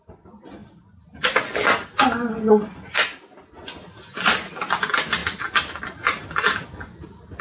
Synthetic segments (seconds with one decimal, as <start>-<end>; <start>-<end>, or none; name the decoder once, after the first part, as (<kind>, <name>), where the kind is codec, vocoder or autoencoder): none